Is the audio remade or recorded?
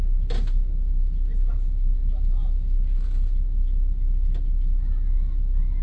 recorded